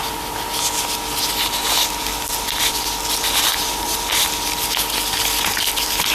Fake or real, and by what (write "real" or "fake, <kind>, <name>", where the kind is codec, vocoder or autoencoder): real